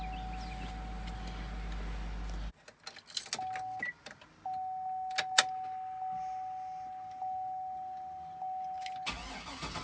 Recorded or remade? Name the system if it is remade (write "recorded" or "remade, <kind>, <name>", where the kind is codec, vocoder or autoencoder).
recorded